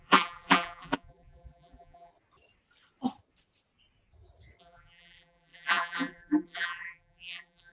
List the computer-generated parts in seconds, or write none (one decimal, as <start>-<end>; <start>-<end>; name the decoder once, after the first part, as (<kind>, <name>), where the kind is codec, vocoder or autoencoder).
0.0-2.1 (vocoder, BigVGAN v2); 4.6-7.7